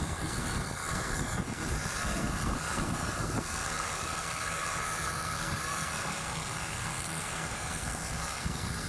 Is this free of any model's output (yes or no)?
no